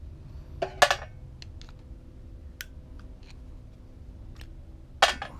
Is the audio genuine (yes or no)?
yes